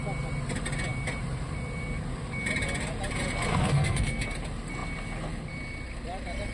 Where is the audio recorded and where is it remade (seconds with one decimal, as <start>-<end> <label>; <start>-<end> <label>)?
0.0-3.5 recorded; 3.5-4.2 remade; 4.2-6.5 recorded